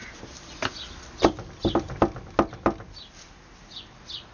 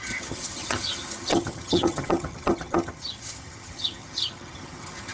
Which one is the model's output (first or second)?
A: second